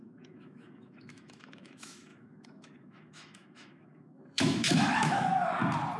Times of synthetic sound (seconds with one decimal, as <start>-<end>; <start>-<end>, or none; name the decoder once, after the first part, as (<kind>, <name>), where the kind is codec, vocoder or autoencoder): 0.0-5.3 (autoencoder, DAC-VAE)